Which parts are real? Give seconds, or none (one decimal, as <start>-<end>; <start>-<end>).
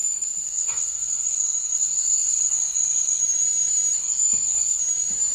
3.2-4.0; 4.8-5.3